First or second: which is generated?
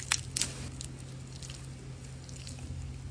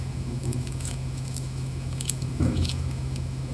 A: second